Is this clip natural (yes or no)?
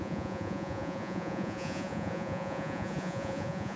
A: no